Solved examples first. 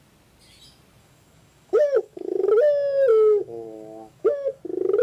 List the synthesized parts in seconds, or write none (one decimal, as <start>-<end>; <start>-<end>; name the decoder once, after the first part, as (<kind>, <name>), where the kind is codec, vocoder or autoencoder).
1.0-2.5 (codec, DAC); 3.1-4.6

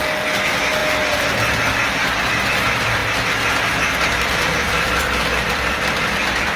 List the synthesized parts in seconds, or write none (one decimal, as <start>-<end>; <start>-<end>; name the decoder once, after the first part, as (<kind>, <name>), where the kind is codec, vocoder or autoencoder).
none

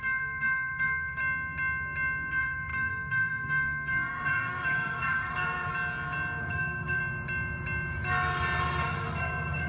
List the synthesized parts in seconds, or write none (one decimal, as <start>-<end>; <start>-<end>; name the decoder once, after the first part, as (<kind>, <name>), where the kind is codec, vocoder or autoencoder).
0.0-1.2 (codec, SNAC); 2.3-5.7; 6.4-7.0; 8.6-9.7

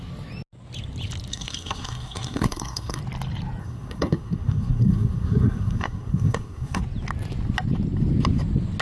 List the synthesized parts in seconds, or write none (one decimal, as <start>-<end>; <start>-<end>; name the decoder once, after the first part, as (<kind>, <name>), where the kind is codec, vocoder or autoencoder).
1.3-3.0 (codec, SNAC); 3.6-6.8

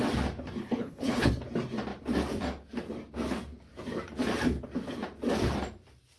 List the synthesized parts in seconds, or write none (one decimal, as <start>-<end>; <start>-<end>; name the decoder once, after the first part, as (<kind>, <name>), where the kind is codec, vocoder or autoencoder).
0.6-1.3 (codec, HILCodec)

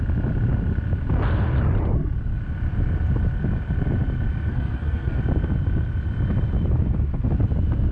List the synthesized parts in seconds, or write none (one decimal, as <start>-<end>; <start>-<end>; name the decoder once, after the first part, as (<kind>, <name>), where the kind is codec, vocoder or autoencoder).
4.5-5.2 (codec, SNAC)

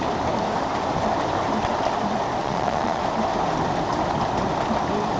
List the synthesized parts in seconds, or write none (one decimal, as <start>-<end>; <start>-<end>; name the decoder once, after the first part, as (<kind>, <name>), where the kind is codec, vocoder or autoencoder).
2.4-3.0 (vocoder, Vocos)

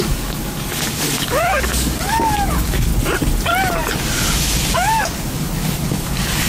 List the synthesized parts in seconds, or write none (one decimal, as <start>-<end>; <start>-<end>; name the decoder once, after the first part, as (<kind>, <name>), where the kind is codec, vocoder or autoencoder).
0.0-2.9 (codec, DAC); 4.7-6.5